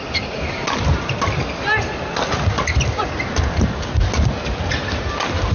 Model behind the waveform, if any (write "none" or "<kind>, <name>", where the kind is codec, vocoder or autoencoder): none